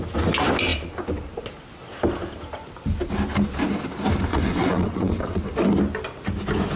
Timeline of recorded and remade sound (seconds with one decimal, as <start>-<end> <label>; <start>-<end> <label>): 0.0-4.3 recorded; 4.3-5.5 remade; 5.5-6.8 recorded